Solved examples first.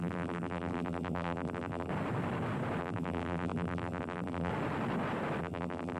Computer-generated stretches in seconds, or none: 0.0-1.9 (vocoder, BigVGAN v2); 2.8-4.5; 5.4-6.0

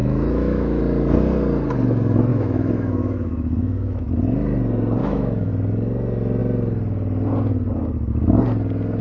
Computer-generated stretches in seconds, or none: 0.0-0.8 (autoencoder, DAC-VAE); 2.3-4.1; 5.0-5.5

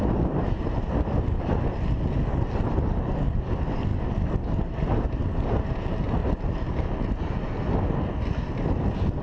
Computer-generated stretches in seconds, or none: none

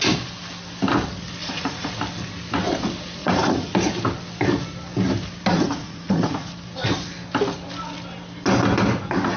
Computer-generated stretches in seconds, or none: 1.4-1.9 (vocoder, Vocos); 3.2-3.7; 5.5-6.5

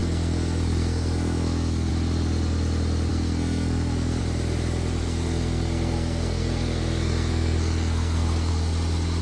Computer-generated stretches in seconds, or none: 0.0-1.9 (codec, SNAC); 3.1-4.2; 5.0-8.5